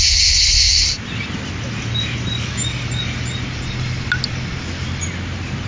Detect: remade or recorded recorded